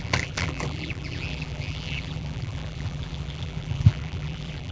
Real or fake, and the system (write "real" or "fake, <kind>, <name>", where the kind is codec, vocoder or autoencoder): fake, vocoder, BigVGAN v2